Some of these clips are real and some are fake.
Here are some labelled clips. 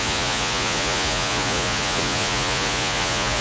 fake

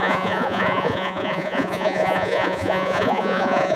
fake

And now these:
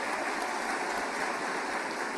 real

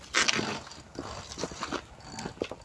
real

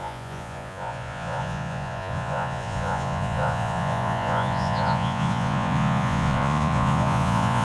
fake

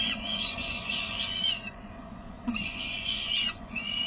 fake